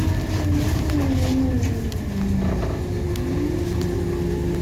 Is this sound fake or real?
real